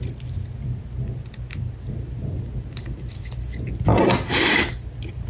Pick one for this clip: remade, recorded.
recorded